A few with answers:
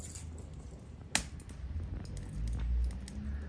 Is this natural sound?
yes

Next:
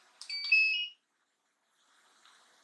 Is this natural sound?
yes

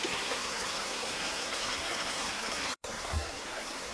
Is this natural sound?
no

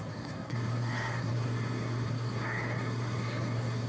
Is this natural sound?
no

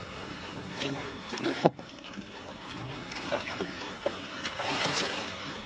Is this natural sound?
no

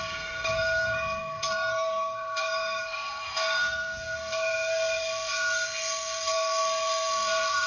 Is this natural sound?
no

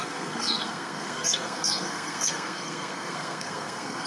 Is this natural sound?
no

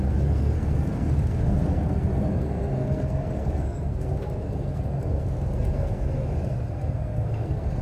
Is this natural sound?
no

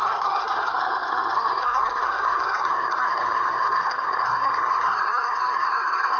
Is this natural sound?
no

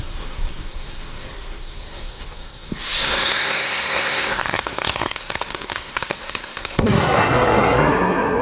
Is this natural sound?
no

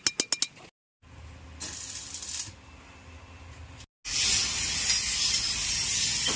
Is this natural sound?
yes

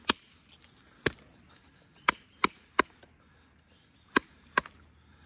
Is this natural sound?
yes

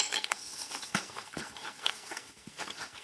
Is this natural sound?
no